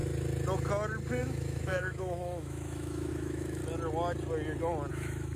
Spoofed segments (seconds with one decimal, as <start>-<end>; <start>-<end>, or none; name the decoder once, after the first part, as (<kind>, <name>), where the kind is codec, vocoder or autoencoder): 1.2-3.6 (autoencoder, DAC-VAE); 4.9-5.4